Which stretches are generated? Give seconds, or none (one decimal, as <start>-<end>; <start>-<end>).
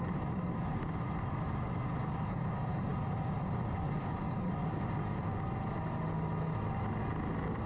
none